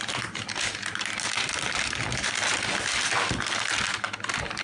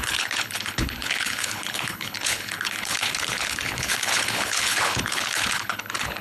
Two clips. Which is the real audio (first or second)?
first